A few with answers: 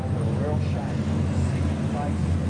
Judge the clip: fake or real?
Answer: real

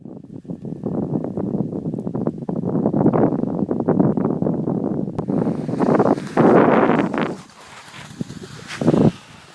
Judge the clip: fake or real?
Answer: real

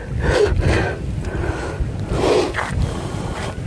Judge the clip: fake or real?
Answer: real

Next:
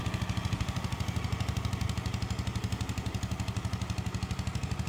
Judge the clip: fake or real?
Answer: real